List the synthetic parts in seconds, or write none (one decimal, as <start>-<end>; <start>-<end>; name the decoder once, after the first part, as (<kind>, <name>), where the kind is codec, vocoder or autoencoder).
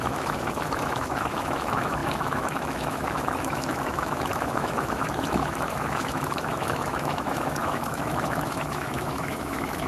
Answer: 0.0-9.9 (autoencoder, DAC-VAE)